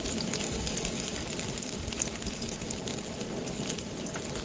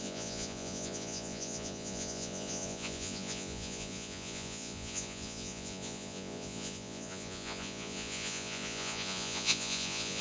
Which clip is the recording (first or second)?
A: first